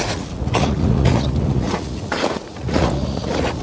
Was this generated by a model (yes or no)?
yes